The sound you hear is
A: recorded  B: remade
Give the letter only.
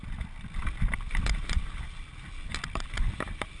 B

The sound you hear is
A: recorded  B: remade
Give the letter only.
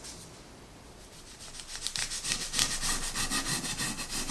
A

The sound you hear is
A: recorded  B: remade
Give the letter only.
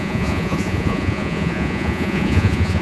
B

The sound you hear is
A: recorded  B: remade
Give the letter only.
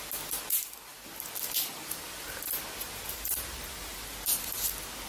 A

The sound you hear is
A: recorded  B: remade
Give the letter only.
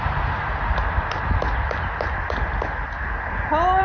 A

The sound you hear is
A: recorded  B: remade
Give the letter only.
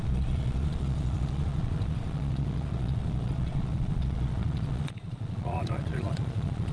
B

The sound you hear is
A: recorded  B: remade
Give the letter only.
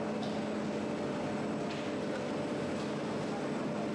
A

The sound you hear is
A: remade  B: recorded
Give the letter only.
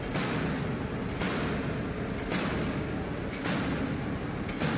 B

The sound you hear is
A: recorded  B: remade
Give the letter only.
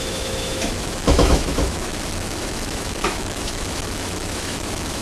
B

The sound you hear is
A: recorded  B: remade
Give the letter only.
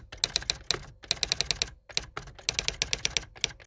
A